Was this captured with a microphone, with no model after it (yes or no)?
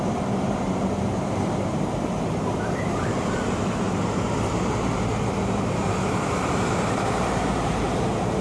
no